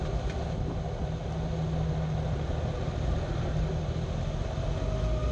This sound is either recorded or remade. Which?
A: recorded